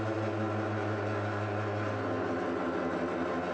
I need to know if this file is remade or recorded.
recorded